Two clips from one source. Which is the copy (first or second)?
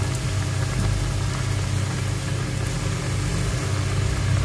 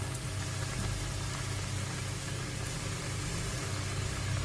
second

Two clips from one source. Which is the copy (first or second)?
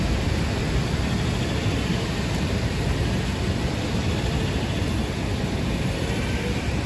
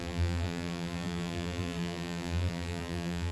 second